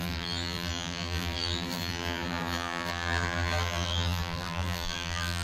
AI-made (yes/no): yes